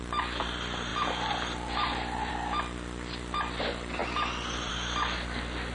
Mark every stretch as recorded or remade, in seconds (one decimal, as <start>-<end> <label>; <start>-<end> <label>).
0.0-5.7 recorded